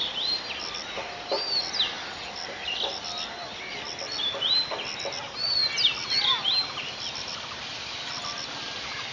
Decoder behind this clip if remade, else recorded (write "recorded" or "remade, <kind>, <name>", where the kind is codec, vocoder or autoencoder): recorded